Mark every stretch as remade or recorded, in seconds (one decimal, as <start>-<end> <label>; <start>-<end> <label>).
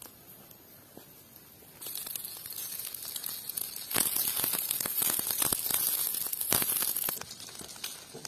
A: 0.0-8.3 recorded